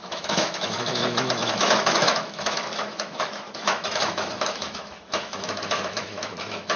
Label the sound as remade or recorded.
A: remade